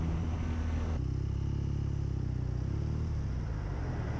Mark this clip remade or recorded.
recorded